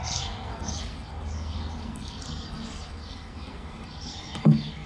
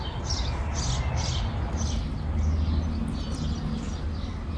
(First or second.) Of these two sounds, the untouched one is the second